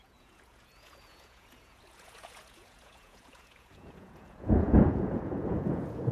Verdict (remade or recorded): remade